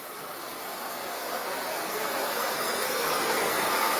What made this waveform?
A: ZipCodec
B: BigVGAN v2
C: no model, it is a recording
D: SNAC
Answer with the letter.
D